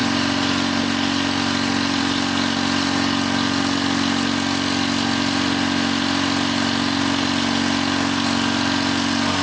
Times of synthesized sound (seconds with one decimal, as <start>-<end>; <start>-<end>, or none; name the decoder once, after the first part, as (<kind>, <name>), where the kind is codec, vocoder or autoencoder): none